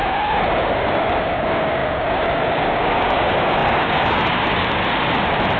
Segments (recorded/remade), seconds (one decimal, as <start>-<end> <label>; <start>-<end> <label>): 0.0-4.8 remade; 4.8-5.6 recorded

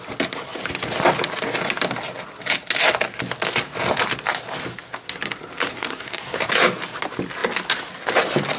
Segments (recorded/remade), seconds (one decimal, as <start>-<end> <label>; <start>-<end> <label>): 0.0-5.7 recorded; 5.7-6.5 remade; 6.5-8.6 recorded

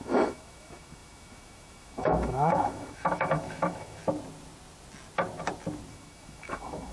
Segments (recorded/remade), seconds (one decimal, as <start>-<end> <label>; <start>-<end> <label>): 0.0-4.0 remade; 4.0-5.9 recorded; 5.9-6.9 remade

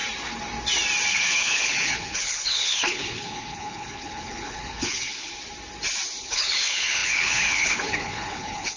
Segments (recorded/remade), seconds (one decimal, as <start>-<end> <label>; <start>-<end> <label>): 0.0-1.1 recorded; 1.1-5.3 remade; 5.3-6.2 recorded; 6.2-8.8 remade

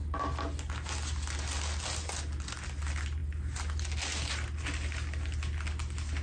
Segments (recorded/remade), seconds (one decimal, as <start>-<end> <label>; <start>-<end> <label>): 0.0-6.2 recorded

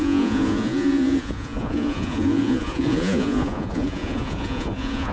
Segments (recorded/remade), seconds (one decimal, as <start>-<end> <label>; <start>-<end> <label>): 0.0-5.1 remade